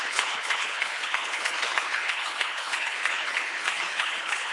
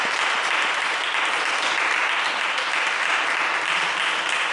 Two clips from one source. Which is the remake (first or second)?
first